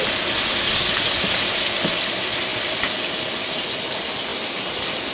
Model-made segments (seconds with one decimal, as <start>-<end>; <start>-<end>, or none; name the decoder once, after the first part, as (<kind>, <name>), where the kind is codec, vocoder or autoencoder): 0.8-1.4 (vocoder, BigVGAN v2)